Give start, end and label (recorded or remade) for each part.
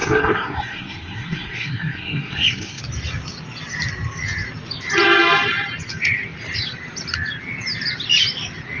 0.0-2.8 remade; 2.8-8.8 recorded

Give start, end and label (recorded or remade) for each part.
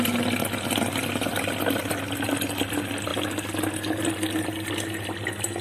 0.0-5.6 recorded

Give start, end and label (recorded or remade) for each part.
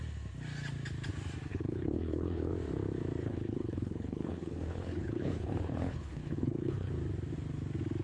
0.0-1.5 recorded; 1.5-2.5 remade; 2.5-3.2 recorded; 3.2-6.9 remade; 6.9-8.0 recorded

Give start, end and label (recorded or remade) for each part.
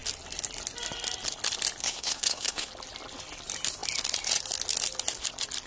0.0-1.8 recorded; 1.8-2.7 remade; 2.7-5.7 recorded